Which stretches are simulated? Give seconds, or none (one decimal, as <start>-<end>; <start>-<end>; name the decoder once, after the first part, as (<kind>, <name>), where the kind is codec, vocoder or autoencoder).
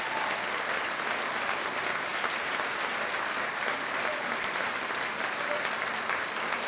none